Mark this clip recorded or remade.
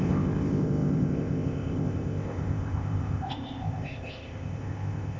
remade